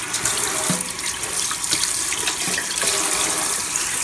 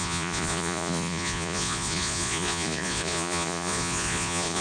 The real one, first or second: first